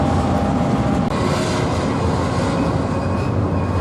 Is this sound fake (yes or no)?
no